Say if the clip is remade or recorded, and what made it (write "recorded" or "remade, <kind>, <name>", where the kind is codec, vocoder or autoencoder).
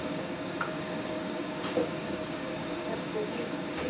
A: remade, codec, DAC